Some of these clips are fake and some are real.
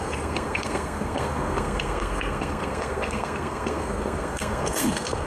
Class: fake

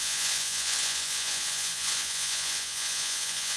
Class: fake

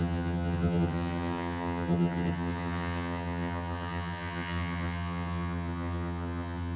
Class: fake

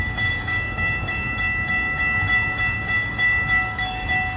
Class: fake